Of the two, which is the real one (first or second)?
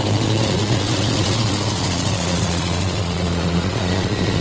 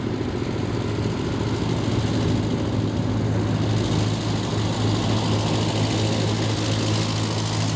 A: second